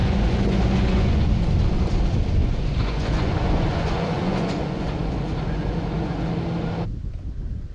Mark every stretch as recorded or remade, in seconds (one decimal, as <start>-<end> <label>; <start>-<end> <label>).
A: 0.0-1.3 remade; 1.3-2.4 recorded; 2.4-6.3 remade; 6.3-7.7 recorded